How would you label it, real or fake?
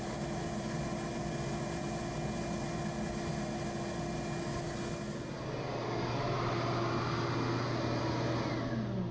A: real